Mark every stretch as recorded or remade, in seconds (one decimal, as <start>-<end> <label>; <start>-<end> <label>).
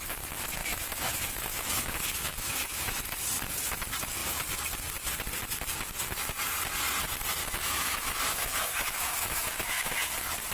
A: 0.0-0.6 recorded; 0.6-2.9 remade; 2.9-7.4 recorded; 7.4-10.1 remade; 10.1-10.5 recorded